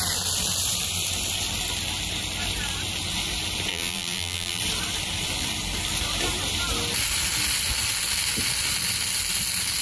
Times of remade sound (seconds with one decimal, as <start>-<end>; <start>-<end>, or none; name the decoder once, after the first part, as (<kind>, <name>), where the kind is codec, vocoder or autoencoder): 3.7-4.6 (vocoder, BigVGAN v2)